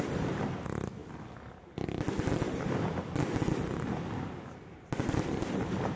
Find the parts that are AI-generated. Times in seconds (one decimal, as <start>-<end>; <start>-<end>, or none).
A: none

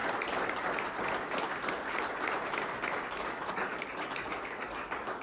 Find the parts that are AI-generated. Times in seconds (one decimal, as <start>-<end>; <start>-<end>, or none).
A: 3.1-5.2

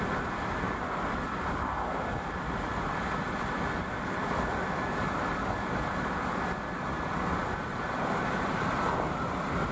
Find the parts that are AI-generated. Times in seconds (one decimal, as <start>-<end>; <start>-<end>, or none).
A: none